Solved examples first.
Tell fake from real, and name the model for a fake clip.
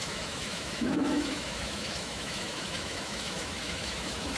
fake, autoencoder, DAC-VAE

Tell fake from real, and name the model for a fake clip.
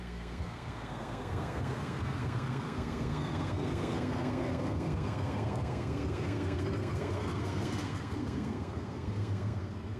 fake, codec, SNAC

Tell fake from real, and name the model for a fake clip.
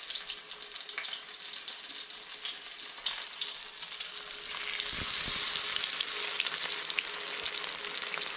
real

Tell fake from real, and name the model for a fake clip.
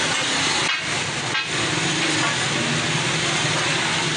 real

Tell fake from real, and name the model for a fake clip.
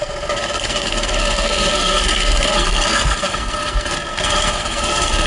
fake, codec, SNAC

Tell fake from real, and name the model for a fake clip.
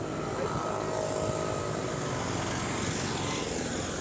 real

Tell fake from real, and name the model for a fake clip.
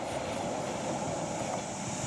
real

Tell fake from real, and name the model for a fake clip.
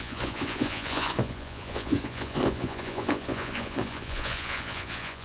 fake, vocoder, Vocos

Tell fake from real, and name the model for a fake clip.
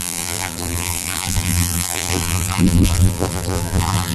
fake, vocoder, BigVGAN v2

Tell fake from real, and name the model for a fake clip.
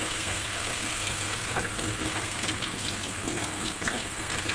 fake, codec, SNAC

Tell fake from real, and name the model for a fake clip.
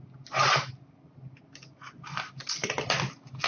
real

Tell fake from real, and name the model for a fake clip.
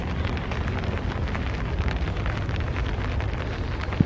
real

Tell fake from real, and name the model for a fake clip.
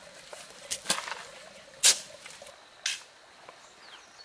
real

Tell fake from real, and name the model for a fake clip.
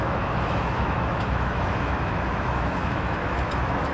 fake, autoencoder, DAC-VAE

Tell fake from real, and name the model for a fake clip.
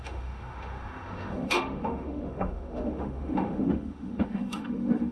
fake, autoencoder, DAC-VAE